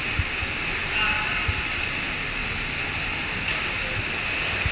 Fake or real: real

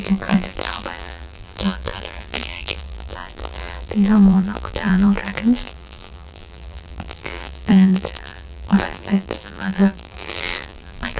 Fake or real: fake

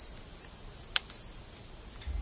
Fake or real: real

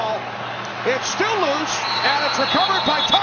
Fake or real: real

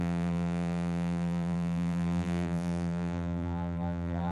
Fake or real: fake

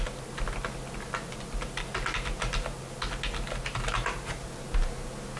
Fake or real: real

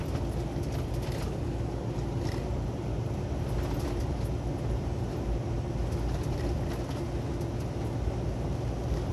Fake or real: real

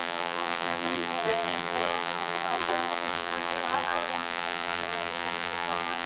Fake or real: fake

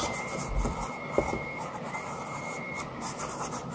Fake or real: real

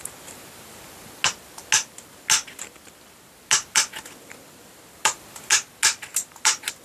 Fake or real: real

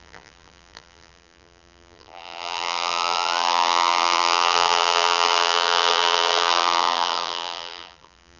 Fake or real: fake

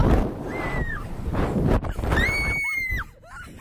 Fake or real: real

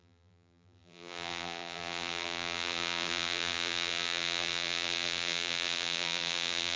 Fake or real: fake